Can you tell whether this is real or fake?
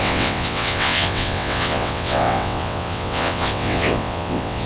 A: fake